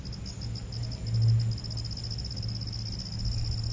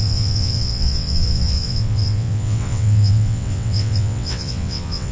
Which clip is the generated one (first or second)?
second